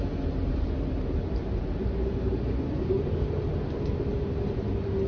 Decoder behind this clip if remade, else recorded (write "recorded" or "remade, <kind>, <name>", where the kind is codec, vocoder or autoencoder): recorded